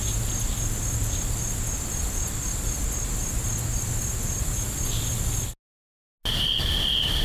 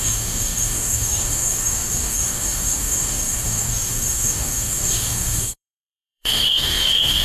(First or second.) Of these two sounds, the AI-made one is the second